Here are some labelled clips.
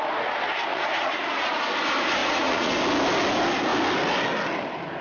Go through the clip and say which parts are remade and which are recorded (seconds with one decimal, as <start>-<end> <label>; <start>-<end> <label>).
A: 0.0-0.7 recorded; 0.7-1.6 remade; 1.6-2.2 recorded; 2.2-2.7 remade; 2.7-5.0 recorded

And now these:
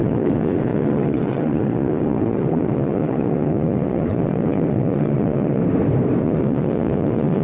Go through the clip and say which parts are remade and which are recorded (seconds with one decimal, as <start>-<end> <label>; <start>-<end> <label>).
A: 0.0-5.6 remade; 5.6-6.2 recorded; 6.2-7.4 remade

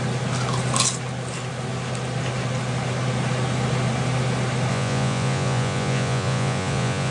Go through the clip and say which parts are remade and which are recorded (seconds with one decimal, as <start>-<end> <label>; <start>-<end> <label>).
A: 0.0-4.7 recorded; 4.7-7.1 remade

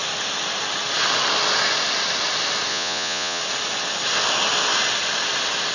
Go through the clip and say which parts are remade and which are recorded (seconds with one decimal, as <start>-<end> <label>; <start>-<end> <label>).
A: 0.0-2.7 recorded; 2.7-3.4 remade; 3.4-5.7 recorded

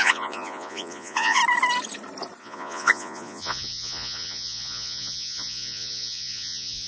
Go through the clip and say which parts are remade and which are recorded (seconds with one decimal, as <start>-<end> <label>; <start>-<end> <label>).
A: 0.0-1.4 remade; 1.4-2.4 recorded; 2.4-6.9 remade

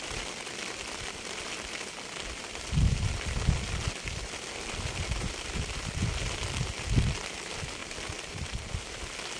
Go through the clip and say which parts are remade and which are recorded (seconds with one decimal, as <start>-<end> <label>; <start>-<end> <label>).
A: 0.0-9.4 recorded

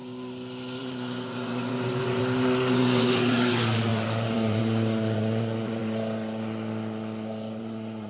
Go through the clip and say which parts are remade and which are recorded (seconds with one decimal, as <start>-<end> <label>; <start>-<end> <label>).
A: 0.0-0.8 recorded; 0.8-2.2 remade; 2.2-2.7 recorded; 2.7-5.8 remade; 5.8-7.6 recorded; 7.6-8.1 remade

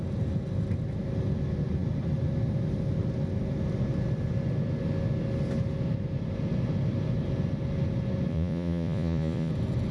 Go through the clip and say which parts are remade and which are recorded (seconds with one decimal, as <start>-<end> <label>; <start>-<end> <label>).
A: 0.0-8.3 recorded; 8.3-9.5 remade; 9.5-9.9 recorded